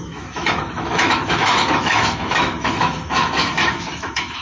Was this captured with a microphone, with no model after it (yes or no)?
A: no